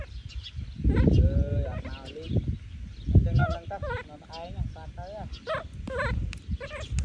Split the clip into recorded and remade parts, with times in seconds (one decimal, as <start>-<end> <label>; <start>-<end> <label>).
0.0-7.0 recorded